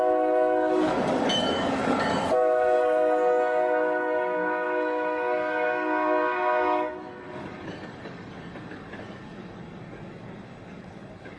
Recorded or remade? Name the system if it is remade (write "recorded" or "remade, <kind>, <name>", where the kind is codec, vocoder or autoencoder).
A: remade, codec, DAC